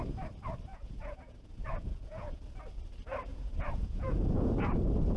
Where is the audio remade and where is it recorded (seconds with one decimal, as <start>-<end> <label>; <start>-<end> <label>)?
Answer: 0.0-0.7 recorded; 0.7-2.4 remade; 2.4-3.3 recorded; 3.3-4.5 remade; 4.5-5.2 recorded